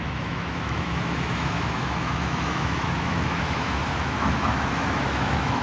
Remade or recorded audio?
remade